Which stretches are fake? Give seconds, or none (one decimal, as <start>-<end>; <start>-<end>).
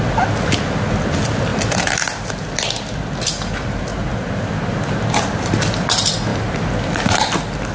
1.5-2.5; 3.9-4.5